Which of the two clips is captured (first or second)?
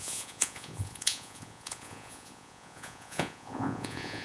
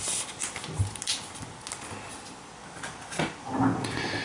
second